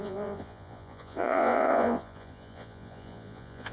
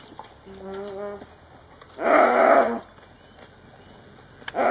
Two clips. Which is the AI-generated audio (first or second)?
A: first